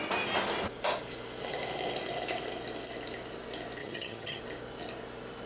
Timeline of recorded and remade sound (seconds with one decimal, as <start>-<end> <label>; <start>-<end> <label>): 0.0-3.8 recorded; 3.8-4.4 remade; 4.4-5.5 recorded